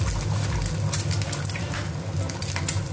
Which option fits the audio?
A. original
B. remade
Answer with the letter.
A